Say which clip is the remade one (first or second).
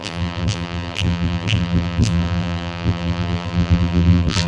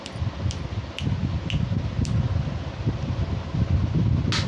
first